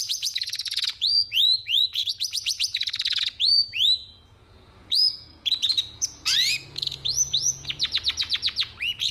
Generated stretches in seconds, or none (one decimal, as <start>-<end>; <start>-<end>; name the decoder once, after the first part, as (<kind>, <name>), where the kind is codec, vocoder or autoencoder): 0.0-9.1 (vocoder, Vocos)